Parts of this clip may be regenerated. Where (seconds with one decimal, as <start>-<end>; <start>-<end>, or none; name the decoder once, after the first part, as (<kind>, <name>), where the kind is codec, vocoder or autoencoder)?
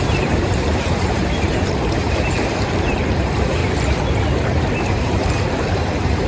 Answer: 0.0-3.6 (vocoder, BigVGAN v2); 4.4-6.3